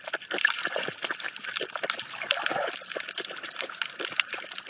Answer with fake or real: fake